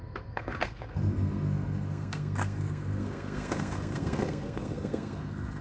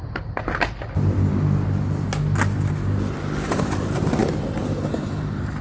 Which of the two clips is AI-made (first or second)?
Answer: first